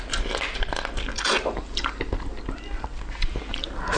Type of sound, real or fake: real